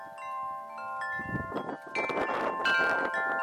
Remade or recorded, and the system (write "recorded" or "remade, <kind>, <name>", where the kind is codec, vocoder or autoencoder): recorded